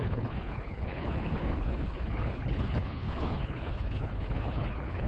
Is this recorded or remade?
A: remade